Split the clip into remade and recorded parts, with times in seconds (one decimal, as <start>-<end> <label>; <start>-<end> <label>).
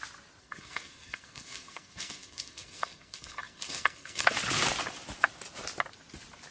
0.0-0.4 recorded; 0.4-4.3 remade; 4.3-6.5 recorded